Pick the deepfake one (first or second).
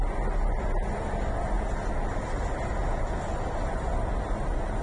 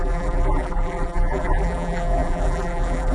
second